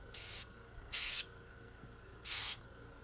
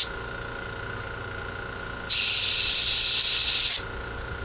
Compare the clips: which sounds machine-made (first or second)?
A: first